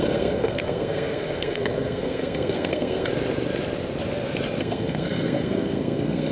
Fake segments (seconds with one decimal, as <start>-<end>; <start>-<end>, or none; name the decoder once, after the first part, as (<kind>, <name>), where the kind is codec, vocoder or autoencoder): 0.0-3.1 (codec, SNAC); 4.6-6.3